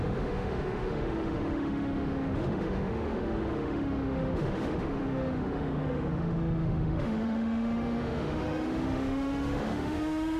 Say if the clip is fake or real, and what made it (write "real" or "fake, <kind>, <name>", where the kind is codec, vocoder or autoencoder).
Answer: fake, autoencoder, DAC-VAE